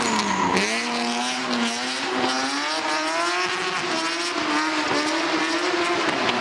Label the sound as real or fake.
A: real